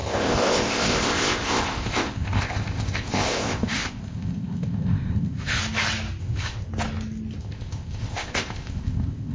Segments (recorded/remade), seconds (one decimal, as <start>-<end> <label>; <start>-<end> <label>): 0.0-5.6 remade; 5.6-6.2 recorded; 6.2-6.7 remade; 6.7-7.4 recorded; 7.4-9.3 remade